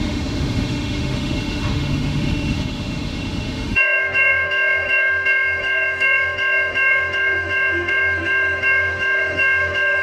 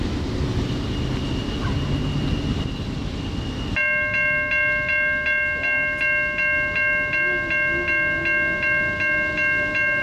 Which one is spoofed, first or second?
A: first